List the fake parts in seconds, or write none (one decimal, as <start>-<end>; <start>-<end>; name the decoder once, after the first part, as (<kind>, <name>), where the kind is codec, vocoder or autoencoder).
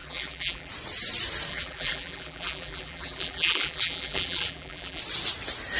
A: 0.0-0.7 (vocoder, BigVGAN v2); 1.5-5.0